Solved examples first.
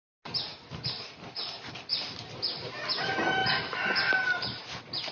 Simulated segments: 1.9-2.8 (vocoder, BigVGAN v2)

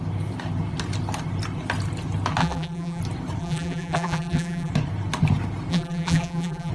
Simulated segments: 2.4-3.0 (vocoder, BigVGAN v2); 3.4-4.7; 5.7-6.7

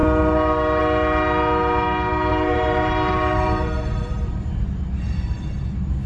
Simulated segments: 2.3-4.5 (vocoder, BigVGAN v2)

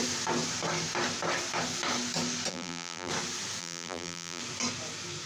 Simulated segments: 2.5-3.1 (vocoder, BigVGAN v2); 3.6-4.4